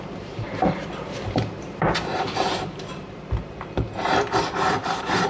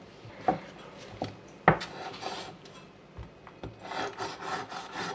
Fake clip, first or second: first